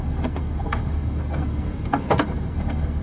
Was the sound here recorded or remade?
remade